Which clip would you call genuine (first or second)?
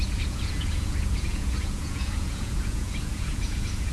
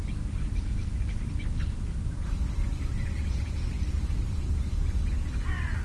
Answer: second